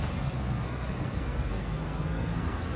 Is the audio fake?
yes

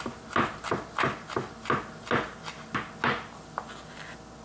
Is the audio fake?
no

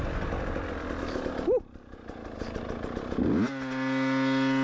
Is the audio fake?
no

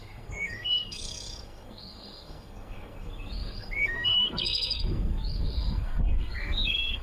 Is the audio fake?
yes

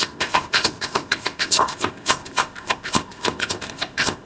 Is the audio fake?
yes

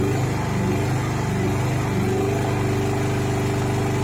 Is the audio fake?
no